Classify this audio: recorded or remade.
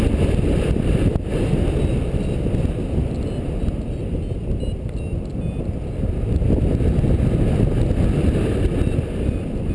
recorded